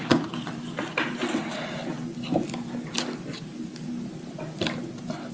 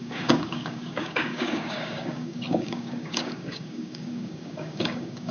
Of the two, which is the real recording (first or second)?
first